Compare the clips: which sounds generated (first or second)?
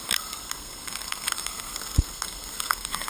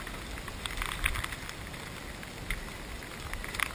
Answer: first